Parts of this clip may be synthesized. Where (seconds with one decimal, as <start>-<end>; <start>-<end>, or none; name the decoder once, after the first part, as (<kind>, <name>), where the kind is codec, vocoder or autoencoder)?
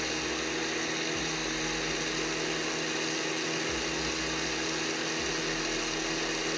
none